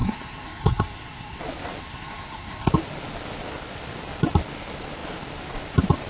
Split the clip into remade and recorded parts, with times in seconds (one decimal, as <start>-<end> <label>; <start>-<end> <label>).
0.0-1.4 remade; 1.4-1.8 recorded; 1.8-2.7 remade; 2.7-6.1 recorded

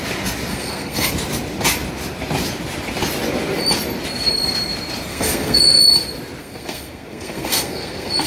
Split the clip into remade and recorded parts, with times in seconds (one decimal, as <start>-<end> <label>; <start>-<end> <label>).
0.0-0.5 recorded; 0.5-1.1 remade; 1.1-5.1 recorded; 5.1-5.8 remade; 5.8-6.4 recorded; 6.4-8.3 remade

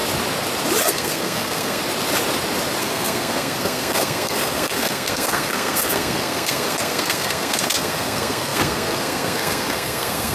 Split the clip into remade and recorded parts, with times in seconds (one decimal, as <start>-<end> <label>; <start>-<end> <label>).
0.0-0.8 recorded; 0.8-1.8 remade; 1.8-2.8 recorded; 2.8-10.3 remade